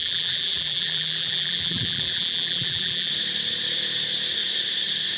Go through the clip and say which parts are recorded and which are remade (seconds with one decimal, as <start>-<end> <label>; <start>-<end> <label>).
0.0-3.1 remade; 3.1-5.2 recorded